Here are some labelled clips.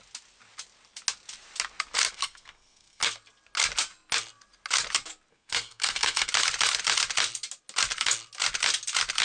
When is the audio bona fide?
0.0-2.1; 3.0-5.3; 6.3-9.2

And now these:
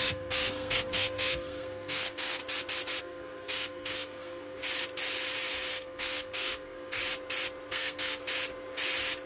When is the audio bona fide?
2.4-3.0; 4.6-5.7; 7.0-7.7; 8.2-9.3